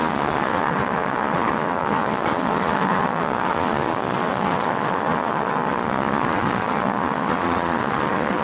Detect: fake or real fake